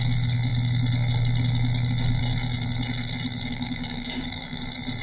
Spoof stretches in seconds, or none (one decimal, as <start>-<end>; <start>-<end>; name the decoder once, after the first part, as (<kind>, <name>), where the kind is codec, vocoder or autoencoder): 3.5-4.6 (codec, DAC)